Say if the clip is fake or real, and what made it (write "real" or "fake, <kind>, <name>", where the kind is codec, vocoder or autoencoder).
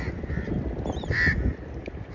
real